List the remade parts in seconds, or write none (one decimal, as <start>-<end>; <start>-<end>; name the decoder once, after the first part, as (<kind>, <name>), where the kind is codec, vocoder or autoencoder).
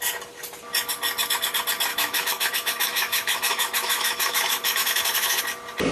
1.9-5.4 (autoencoder, DAC-VAE)